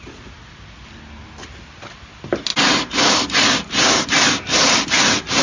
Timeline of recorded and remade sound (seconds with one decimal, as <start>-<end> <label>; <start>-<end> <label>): 0.0-5.4 recorded